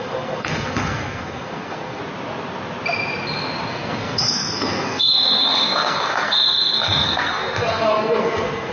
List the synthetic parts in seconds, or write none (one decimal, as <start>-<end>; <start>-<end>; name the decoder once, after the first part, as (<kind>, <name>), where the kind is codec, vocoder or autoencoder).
0.0-2.0 (codec, SNAC); 3.7-8.7